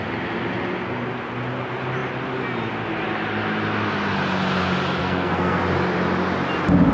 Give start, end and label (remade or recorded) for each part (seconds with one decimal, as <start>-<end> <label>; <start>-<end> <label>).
0.0-5.0 recorded; 5.0-5.6 remade; 5.6-6.9 recorded